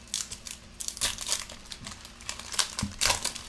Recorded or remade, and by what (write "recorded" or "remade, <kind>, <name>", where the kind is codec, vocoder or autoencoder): recorded